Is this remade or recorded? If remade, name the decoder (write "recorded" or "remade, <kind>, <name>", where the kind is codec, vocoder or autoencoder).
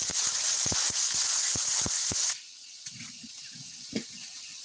remade, vocoder, Vocos